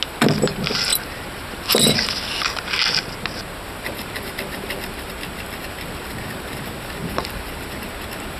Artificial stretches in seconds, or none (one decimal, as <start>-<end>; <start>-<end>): 0.9-5.1; 7.0-7.7